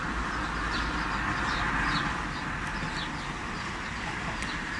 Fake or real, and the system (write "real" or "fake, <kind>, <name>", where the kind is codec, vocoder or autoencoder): real